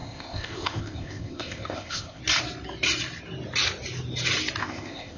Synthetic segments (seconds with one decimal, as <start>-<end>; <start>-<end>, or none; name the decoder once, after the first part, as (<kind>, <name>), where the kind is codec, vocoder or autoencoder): 0.0-2.2 (codec, ZipCodec); 4.6-5.2